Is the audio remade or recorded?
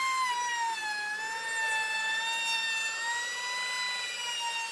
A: recorded